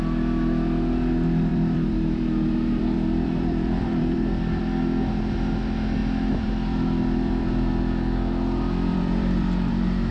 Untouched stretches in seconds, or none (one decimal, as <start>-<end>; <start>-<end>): 0.0-1.5; 4.6-6.0; 7.7-8.9; 9.7-10.1